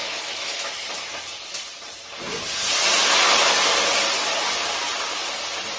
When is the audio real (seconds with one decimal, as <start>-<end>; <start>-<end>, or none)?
0.9-5.8